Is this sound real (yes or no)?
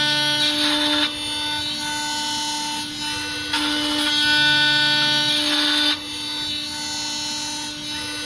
yes